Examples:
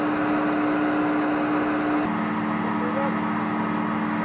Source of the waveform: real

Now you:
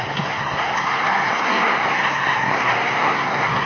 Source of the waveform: fake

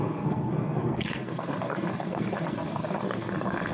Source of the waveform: fake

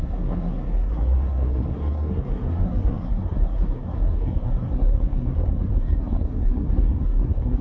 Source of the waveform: fake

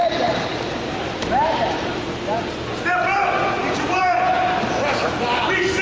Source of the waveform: fake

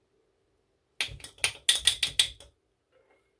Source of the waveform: real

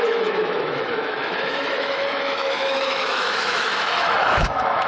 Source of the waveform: fake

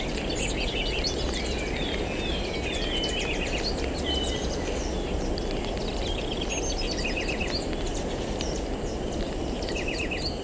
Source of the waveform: real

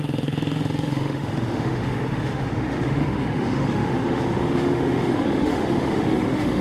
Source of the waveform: fake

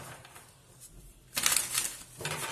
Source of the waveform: real